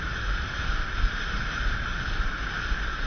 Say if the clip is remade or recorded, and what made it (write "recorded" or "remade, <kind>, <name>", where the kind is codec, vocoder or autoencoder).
remade, vocoder, BigVGAN v2